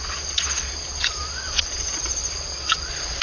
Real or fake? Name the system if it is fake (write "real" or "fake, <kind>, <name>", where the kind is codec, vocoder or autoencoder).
fake, vocoder, Vocos